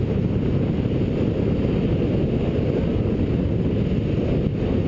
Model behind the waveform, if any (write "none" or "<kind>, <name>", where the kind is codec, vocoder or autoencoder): none